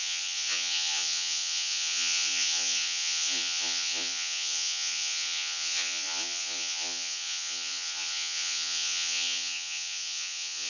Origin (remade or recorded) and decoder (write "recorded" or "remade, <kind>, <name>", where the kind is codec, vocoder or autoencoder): remade, vocoder, Vocos